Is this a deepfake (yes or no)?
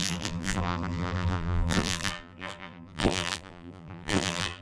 yes